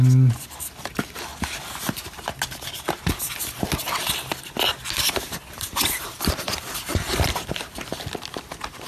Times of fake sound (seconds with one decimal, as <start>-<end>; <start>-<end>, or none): 3.8-8.0